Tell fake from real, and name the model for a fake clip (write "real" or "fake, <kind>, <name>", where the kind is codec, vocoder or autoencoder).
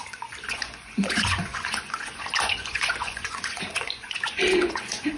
fake, vocoder, Vocos